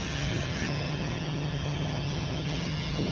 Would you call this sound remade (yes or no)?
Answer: yes